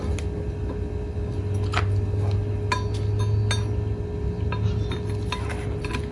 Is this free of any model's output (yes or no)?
yes